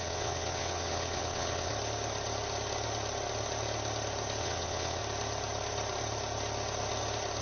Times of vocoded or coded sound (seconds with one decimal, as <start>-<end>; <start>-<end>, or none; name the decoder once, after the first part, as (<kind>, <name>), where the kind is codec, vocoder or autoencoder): 0.0-1.7 (vocoder, WaveNeXt); 4.4-5.0